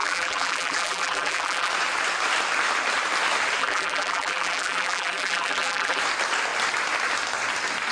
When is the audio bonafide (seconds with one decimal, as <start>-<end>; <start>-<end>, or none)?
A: 1.7-3.6; 6.0-7.9